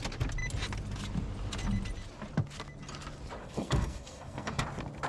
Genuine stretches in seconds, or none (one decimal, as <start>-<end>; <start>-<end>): 0.0-3.4; 4.6-5.1